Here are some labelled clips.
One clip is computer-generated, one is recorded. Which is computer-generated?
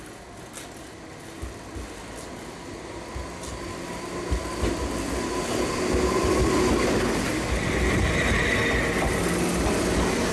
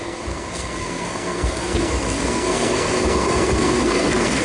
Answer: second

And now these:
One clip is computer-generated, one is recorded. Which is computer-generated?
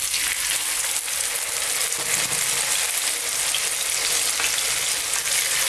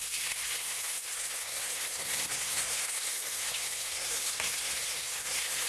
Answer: second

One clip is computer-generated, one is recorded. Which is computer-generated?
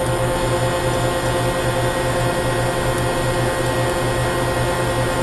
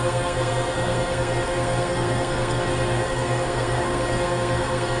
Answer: second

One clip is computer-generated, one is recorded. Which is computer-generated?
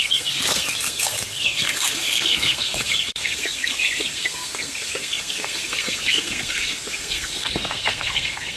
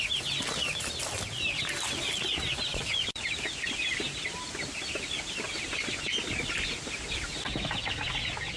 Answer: first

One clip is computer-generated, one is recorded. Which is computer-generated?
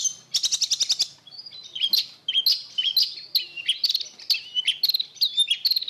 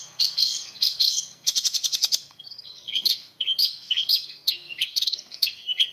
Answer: second